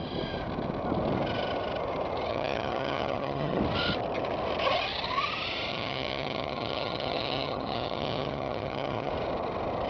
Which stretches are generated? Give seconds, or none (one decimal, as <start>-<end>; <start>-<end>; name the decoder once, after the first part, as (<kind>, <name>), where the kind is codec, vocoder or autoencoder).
2.3-3.6 (vocoder, HiFi-GAN); 5.7-9.1